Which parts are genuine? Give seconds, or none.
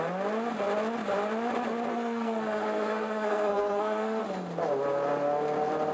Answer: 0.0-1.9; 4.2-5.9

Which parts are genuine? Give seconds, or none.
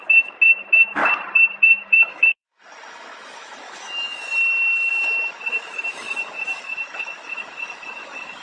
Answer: 1.0-1.6; 4.3-4.9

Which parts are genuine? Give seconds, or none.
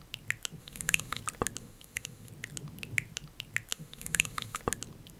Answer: 0.0-0.6; 1.2-1.6; 2.3-3.7; 4.6-5.2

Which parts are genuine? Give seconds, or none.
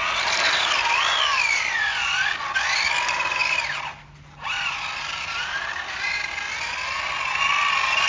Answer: 0.0-8.1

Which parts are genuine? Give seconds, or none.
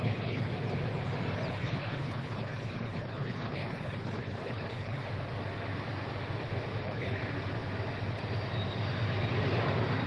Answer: 0.5-1.5; 5.0-6.8; 7.2-10.1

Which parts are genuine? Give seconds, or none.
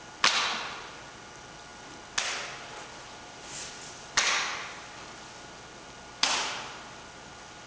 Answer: 0.0-7.7